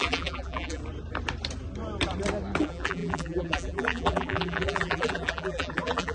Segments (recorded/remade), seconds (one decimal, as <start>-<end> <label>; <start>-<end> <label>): 0.0-0.8 remade; 0.8-2.6 recorded; 2.6-6.1 remade